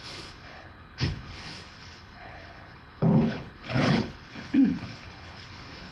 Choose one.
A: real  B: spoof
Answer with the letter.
B